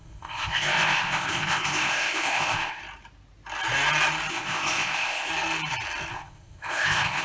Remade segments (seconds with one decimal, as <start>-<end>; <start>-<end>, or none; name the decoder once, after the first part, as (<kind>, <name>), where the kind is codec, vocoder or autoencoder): 0.0-2.8 (codec, ZipCodec); 4.3-5.3; 6.1-7.2